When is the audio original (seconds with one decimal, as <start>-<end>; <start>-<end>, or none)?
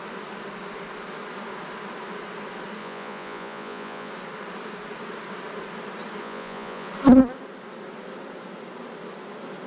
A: 0.0-2.8; 4.1-6.2; 6.9-9.7